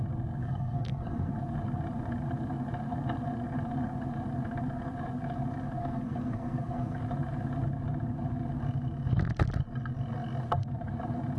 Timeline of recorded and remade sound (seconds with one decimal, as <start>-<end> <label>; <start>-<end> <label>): 0.0-0.4 recorded; 0.4-1.3 remade; 1.3-5.8 recorded; 5.8-7.0 remade; 7.0-11.4 recorded